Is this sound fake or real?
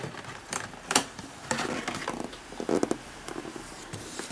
fake